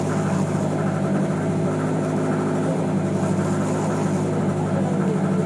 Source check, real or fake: real